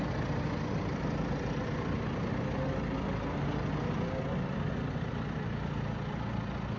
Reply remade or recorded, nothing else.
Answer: recorded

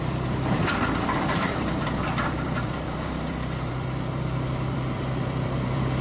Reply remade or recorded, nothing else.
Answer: remade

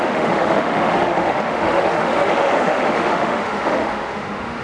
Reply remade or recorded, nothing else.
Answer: remade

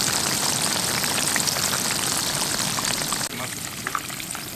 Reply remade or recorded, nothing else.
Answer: remade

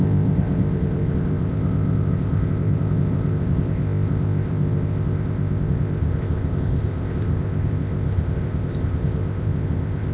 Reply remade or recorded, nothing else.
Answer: remade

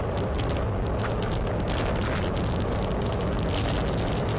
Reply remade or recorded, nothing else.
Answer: recorded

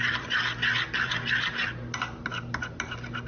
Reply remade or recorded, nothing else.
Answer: recorded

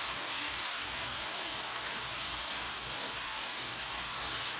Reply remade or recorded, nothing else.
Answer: remade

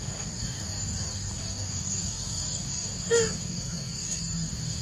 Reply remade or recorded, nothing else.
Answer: remade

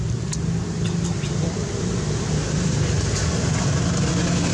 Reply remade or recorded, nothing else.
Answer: recorded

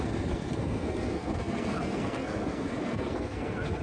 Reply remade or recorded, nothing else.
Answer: remade